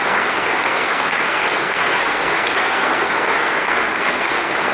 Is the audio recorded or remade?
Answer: remade